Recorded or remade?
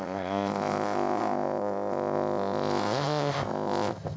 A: remade